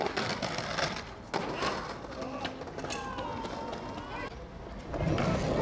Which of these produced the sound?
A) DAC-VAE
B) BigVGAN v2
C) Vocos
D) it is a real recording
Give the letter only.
D